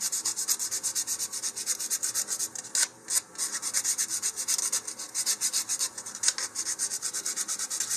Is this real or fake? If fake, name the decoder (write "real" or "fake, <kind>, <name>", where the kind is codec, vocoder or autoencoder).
real